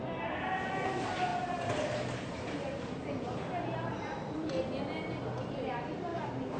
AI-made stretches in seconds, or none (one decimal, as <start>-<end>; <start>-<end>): 1.3-4.8